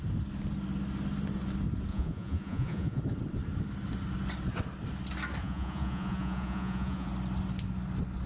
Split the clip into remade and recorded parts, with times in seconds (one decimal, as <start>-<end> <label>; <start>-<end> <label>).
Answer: 0.0-1.9 recorded; 1.9-3.0 remade; 3.0-5.4 recorded; 5.4-7.1 remade; 7.1-8.3 recorded